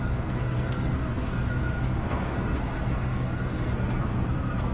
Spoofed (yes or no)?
yes